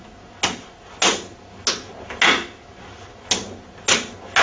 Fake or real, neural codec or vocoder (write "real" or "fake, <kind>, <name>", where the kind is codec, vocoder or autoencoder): real